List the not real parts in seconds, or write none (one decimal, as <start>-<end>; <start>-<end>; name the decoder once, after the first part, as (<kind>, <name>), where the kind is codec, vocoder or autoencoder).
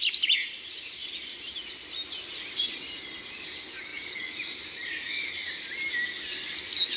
3.9-5.9 (vocoder, BigVGAN v2)